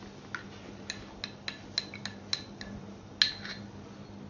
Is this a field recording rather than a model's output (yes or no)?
yes